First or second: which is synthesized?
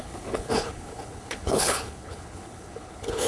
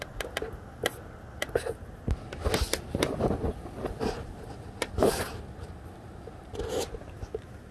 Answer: first